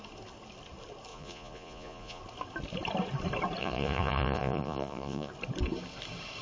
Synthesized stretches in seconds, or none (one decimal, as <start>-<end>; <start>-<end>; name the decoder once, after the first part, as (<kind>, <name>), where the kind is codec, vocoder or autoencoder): 1.1-2.2 (vocoder, Vocos); 3.6-5.3

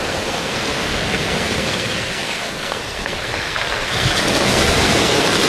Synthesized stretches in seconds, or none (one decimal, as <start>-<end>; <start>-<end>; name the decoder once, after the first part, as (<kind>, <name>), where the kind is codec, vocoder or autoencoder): 0.0-5.5 (codec, SNAC)

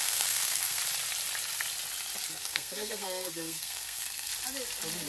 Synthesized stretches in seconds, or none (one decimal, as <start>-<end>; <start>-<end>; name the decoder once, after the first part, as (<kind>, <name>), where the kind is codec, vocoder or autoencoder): 0.0-0.8 (codec, SNAC); 2.3-4.3

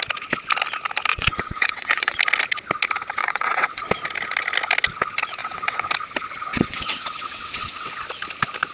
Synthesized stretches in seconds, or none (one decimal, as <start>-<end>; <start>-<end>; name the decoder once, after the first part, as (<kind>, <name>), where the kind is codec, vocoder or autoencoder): 1.1-2.2 (vocoder, WaveNeXt); 3.2-3.8; 5.4-5.9; 6.5-7.9

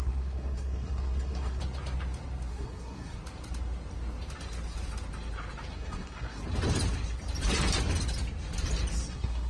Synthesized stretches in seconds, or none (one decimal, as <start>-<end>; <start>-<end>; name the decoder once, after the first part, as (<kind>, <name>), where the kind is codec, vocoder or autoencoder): 0.0-1.6 (codec, SNAC); 2.5-3.2; 5.7-6.4; 9.1-9.5

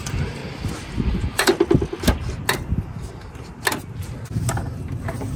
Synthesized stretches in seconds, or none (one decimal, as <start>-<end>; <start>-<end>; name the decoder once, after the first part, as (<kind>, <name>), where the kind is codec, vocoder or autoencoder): 0.0-0.4 (vocoder, BigVGAN v2); 1.1-1.5; 4.6-5.4

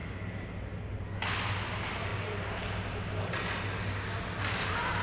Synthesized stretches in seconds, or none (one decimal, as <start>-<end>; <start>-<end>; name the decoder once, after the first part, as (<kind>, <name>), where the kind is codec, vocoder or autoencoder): none